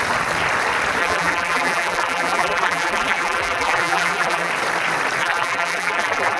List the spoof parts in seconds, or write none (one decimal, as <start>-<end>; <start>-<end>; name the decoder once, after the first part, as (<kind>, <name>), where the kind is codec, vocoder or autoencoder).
1.0-4.5 (vocoder, BigVGAN v2); 5.2-6.4